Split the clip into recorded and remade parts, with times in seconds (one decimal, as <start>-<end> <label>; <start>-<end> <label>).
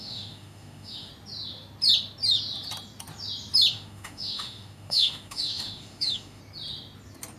0.0-1.1 remade; 1.1-3.7 recorded; 3.7-6.4 remade; 6.4-7.4 recorded